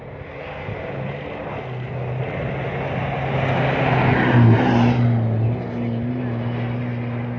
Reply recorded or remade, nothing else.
recorded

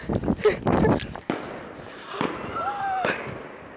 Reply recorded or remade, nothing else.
recorded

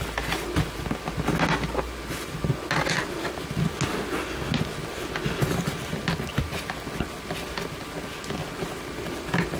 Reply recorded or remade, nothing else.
recorded